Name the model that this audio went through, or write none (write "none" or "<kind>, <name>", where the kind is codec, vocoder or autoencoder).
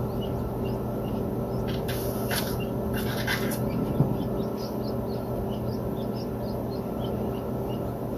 none